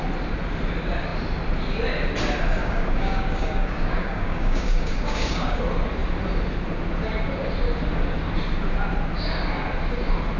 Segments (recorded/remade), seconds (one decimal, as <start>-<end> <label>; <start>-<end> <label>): 0.0-2.6 recorded; 2.6-5.6 remade; 5.6-10.4 recorded